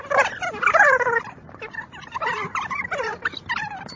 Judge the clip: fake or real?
fake